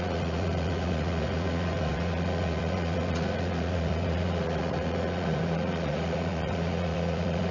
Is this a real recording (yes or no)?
no